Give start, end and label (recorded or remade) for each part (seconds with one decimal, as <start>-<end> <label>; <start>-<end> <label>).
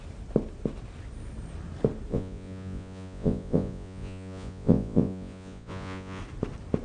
0.0-2.1 recorded; 2.1-6.2 remade; 6.2-6.8 recorded